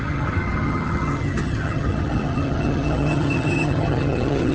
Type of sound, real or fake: fake